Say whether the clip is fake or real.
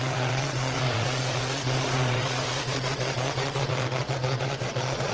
fake